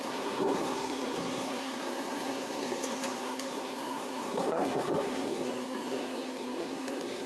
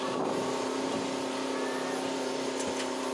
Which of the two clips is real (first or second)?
second